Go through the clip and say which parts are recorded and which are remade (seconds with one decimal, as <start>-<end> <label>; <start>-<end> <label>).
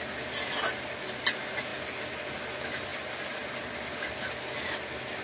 0.0-2.9 recorded; 2.9-4.1 remade; 4.1-5.2 recorded